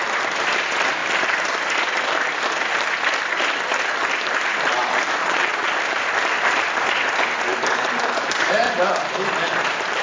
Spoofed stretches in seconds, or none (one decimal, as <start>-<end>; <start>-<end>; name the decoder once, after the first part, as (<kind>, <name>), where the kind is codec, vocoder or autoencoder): 5.2-5.7 (vocoder, Vocos)